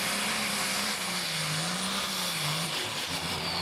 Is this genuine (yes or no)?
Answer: yes